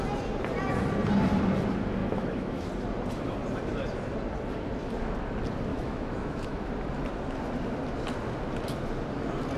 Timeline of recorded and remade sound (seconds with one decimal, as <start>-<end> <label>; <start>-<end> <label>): 0.0-2.0 recorded; 2.0-2.7 remade; 2.7-5.7 recorded; 5.7-6.7 remade; 6.7-9.6 recorded